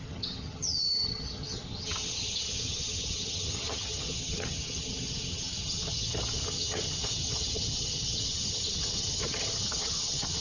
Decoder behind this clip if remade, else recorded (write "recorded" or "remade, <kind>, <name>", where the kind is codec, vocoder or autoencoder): remade, vocoder, HiFi-GAN